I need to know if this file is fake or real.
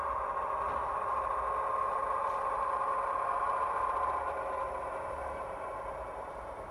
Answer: fake